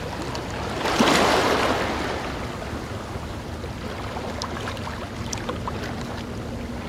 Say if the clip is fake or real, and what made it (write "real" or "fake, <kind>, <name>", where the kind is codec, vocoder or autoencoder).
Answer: real